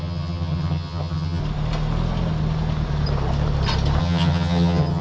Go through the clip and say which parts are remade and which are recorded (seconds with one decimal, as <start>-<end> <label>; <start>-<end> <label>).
0.0-1.4 remade; 1.4-4.0 recorded; 4.0-5.0 remade